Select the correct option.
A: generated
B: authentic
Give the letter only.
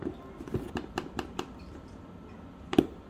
B